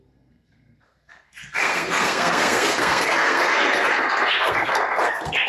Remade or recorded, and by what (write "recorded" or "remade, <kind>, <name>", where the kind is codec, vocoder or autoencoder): remade, codec, SNAC